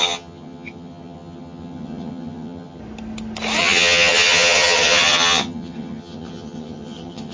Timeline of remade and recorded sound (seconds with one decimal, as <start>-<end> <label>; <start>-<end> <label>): 0.0-2.8 remade; 2.8-3.6 recorded; 3.6-7.3 remade